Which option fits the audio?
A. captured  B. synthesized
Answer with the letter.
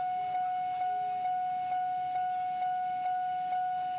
A